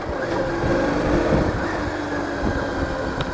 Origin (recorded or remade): recorded